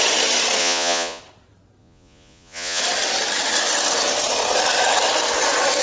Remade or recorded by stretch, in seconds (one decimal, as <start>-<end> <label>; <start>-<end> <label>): 0.0-0.6 recorded; 0.6-1.2 remade; 1.2-1.8 recorded; 1.8-2.8 remade; 2.8-5.8 recorded